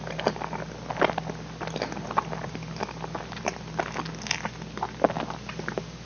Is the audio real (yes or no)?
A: yes